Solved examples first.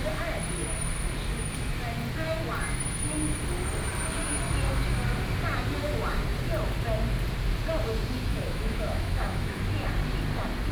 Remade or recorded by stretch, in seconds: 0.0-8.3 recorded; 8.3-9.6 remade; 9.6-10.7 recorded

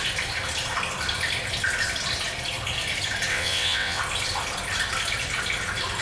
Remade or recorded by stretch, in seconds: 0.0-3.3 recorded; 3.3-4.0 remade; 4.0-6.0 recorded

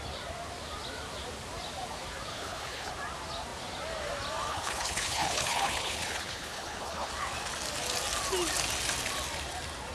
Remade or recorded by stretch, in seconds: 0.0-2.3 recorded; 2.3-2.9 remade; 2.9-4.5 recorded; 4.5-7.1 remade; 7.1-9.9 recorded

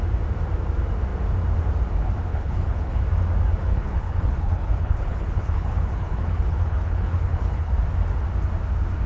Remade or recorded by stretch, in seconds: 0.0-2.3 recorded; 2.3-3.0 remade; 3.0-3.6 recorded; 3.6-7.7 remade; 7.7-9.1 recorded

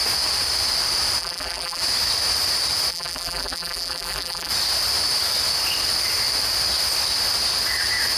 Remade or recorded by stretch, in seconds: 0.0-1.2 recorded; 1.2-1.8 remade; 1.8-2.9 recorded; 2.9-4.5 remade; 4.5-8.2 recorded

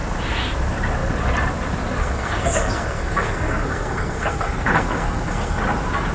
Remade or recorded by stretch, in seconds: 0.0-2.0 recorded; 2.0-5.6 remade; 5.6-6.1 recorded